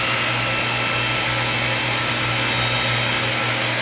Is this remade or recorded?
recorded